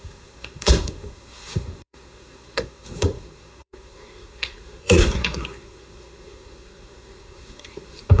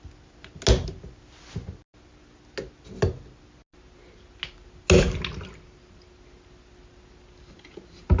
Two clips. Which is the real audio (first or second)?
second